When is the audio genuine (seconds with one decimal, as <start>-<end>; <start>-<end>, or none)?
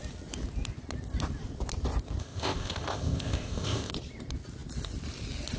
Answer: 0.0-2.2; 3.9-5.6